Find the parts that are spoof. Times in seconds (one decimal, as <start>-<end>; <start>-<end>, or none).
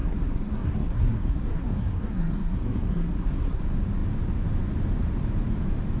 0.0-3.6